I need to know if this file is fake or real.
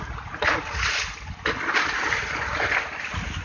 real